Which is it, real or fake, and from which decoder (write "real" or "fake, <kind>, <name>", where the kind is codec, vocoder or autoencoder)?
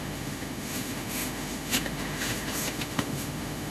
fake, autoencoder, DAC-VAE